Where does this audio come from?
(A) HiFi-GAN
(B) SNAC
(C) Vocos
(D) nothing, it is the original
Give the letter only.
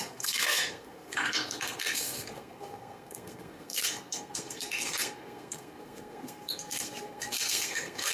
B